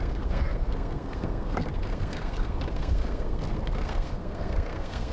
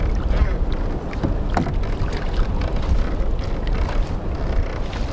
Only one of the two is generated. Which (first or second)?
first